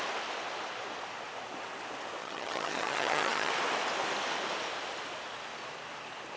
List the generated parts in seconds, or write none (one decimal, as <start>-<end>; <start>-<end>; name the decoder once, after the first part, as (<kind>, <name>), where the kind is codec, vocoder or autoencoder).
2.2-3.5 (vocoder, HiFi-GAN)